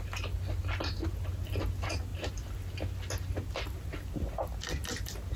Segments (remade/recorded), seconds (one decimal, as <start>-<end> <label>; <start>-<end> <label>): 0.0-5.4 recorded